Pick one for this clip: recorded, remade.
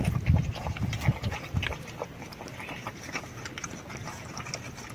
recorded